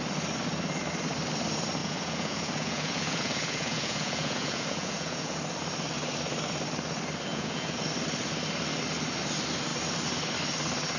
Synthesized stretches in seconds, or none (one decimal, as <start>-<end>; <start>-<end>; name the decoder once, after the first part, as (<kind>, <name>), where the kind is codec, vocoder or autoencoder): 1.8-5.4 (vocoder, Vocos); 7.3-7.8